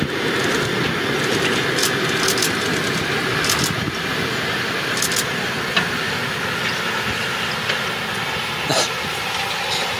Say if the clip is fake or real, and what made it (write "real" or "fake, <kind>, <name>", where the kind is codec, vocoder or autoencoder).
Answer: real